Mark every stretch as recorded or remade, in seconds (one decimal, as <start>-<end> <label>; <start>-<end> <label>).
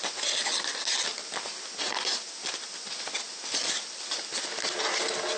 0.0-5.4 recorded